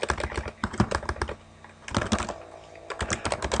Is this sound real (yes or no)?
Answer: yes